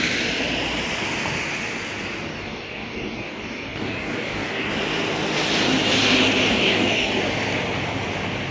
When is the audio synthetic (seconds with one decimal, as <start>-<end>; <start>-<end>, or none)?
2.3-4.7; 6.5-7.1